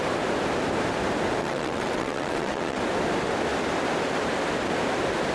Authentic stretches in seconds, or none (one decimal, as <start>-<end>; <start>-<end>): 0.0-1.4; 2.8-5.3